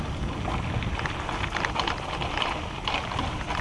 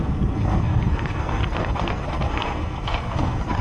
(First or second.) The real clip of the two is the first